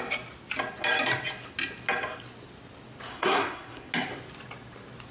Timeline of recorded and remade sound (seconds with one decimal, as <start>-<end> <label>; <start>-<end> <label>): 0.0-3.1 recorded; 3.1-3.9 remade; 3.9-5.1 recorded